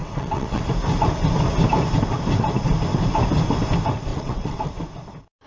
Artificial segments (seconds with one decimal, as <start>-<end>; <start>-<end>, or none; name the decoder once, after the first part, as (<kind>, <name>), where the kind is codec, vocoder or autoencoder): 0.0-0.6 (vocoder, WaveNeXt); 4.1-4.7